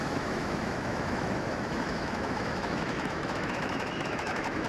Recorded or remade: remade